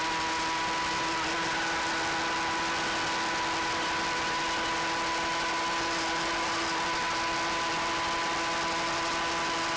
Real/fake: real